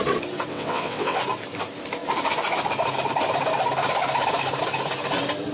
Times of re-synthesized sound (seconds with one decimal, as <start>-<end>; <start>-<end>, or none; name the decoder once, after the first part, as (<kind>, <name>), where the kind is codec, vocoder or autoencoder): 0.5-1.2 (vocoder, WaveNeXt)